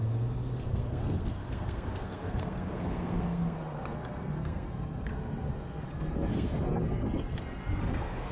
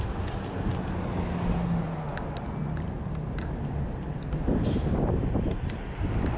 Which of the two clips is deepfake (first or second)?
first